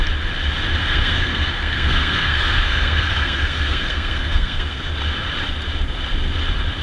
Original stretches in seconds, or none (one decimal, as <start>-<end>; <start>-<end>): 0.0-0.8; 4.9-6.8